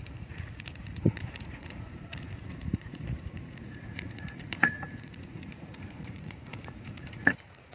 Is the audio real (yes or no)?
no